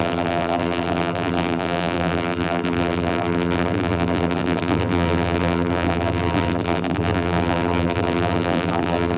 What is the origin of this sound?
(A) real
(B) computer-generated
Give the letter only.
B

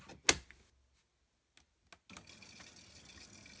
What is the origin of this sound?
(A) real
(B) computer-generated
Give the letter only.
A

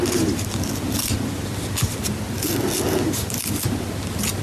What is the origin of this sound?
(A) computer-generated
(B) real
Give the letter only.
B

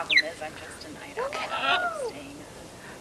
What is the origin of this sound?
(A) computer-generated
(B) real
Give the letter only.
B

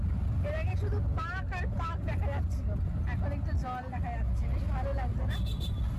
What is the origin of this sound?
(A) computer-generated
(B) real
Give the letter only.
B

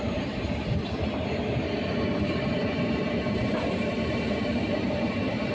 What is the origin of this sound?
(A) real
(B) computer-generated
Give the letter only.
B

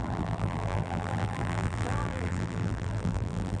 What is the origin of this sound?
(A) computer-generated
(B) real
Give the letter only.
A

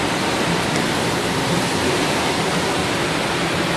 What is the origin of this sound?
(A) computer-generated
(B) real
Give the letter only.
A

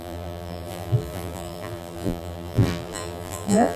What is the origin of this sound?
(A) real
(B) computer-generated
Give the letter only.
B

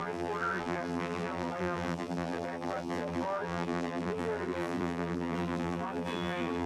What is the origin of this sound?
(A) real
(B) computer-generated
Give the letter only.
B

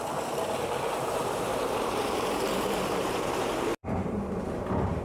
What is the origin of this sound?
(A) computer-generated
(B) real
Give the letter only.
A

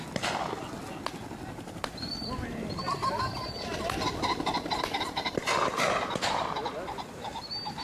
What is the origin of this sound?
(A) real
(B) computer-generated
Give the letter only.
A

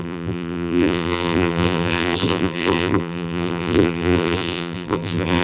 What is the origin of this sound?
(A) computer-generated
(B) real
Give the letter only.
A